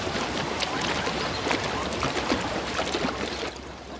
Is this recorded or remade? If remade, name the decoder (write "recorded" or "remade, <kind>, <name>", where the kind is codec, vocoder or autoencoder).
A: recorded